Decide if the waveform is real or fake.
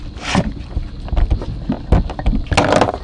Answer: real